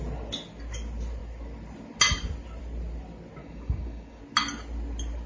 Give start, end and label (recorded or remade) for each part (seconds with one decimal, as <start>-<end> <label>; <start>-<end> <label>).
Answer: 0.0-3.4 recorded; 3.4-4.2 remade; 4.2-5.3 recorded